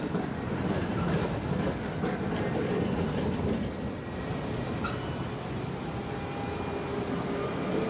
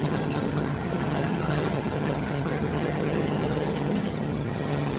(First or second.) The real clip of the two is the first